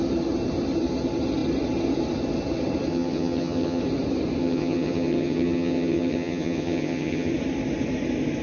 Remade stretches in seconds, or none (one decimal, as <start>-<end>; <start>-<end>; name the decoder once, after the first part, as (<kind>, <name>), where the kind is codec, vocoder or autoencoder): 2.9-3.8 (vocoder, HiFi-GAN); 4.4-7.3